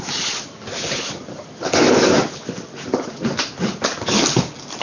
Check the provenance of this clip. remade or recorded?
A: recorded